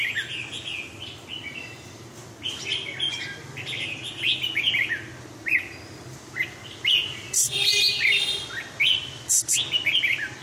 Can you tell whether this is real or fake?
real